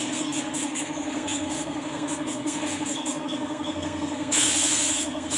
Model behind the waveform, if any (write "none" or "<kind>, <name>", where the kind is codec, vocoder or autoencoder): codec, SNAC